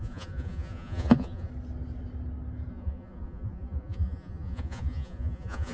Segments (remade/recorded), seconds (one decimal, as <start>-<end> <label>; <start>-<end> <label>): 0.0-1.5 remade; 1.5-2.7 recorded; 2.7-5.7 remade